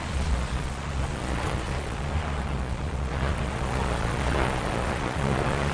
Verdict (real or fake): fake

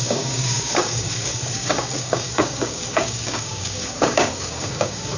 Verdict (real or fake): fake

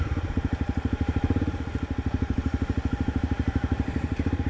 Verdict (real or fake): fake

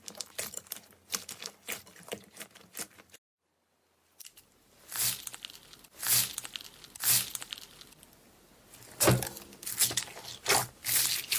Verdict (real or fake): real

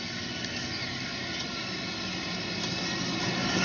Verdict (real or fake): real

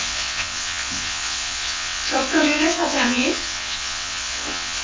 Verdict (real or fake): fake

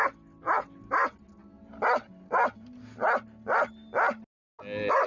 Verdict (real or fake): real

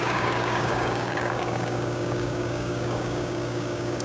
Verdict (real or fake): fake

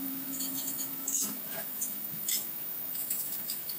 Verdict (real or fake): fake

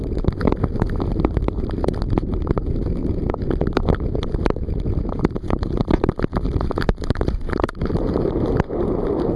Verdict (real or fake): fake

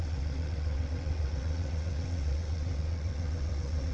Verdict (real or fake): fake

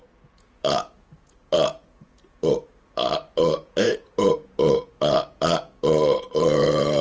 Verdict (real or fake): fake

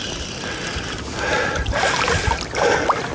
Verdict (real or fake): real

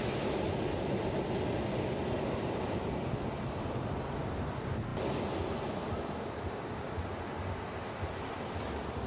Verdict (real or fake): real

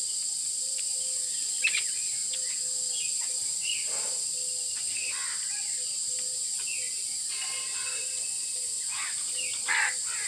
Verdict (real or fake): real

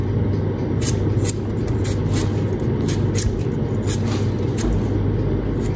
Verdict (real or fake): real